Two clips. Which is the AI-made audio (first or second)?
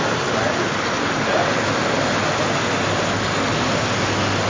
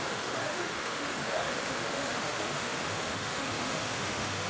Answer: second